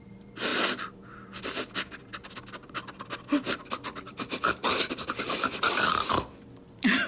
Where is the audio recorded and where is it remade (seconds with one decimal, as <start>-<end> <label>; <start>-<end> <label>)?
0.0-7.1 remade